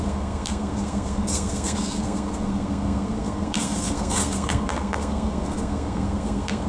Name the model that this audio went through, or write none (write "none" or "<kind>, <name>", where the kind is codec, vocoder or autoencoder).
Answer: codec, SNAC